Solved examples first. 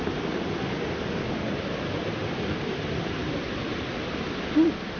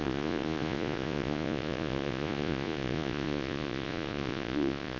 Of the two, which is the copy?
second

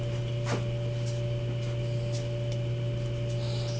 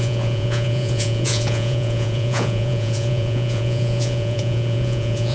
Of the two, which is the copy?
second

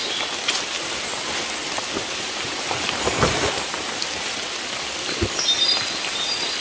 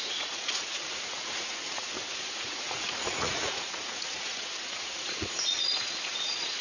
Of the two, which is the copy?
second